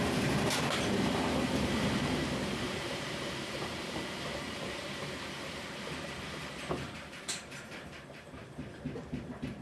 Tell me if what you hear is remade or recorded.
remade